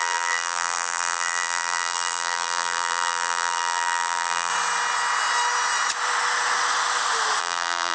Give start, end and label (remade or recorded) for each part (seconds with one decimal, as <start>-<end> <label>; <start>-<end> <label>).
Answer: 0.0-4.5 remade; 4.5-7.4 recorded; 7.4-7.9 remade